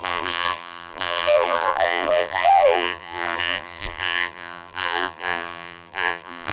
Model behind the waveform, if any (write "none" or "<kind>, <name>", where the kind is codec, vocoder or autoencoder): vocoder, BigVGAN v2